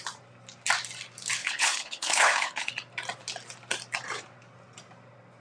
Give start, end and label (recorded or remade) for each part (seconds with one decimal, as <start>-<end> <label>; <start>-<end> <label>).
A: 0.0-1.4 recorded; 1.4-2.7 remade; 2.7-5.4 recorded

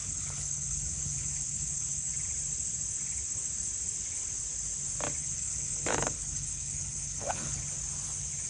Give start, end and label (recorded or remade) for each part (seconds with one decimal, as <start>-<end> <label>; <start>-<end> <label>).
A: 0.0-2.1 remade; 2.1-5.2 recorded; 5.2-7.6 remade; 7.6-8.5 recorded

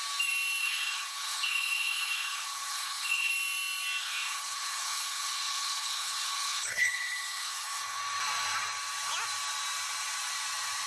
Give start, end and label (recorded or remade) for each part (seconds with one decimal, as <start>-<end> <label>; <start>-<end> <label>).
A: 0.0-0.6 recorded; 0.6-3.3 remade; 3.3-4.0 recorded; 4.0-8.0 remade; 8.0-10.9 recorded

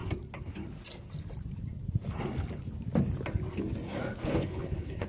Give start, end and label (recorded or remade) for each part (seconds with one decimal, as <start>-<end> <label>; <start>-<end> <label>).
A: 0.0-4.2 recorded; 4.2-5.1 remade